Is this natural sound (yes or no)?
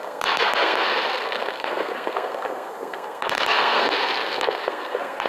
no